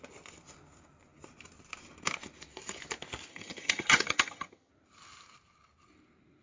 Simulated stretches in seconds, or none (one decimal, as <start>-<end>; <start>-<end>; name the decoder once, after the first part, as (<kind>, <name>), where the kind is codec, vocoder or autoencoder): 3.3-4.7 (vocoder, HiFi-GAN)